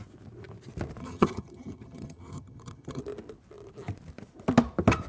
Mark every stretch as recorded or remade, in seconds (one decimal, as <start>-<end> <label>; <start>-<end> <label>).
0.0-1.0 recorded; 1.0-3.0 remade; 3.0-5.1 recorded